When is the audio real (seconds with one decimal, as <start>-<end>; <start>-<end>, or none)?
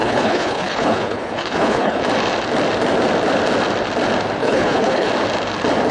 2.0-4.4; 5.1-5.9